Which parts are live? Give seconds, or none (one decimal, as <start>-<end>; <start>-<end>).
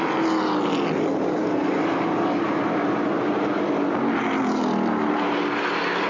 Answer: 0.0-6.1